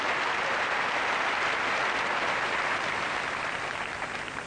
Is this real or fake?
fake